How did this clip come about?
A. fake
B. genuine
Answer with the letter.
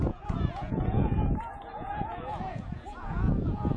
A